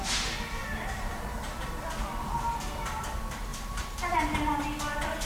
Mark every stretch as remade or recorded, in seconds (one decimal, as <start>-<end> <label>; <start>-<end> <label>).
0.0-0.6 recorded; 0.6-1.6 remade; 1.6-3.5 recorded; 3.5-4.2 remade; 4.2-5.3 recorded